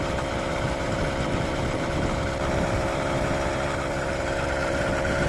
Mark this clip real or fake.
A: fake